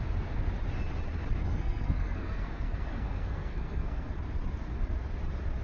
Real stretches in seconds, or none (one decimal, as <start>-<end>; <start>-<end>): 0.0-1.4; 4.1-5.6